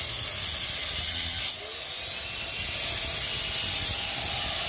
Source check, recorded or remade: recorded